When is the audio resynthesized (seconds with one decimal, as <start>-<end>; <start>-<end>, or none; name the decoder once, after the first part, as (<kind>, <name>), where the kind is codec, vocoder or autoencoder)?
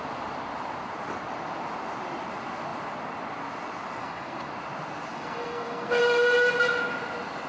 4.0-4.5 (codec, SNAC); 5.1-6.0